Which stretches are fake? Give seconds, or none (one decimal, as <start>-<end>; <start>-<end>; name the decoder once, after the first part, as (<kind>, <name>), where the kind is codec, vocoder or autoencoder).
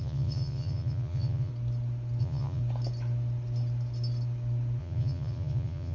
0.0-1.5 (vocoder, Vocos); 2.2-2.6; 4.8-5.9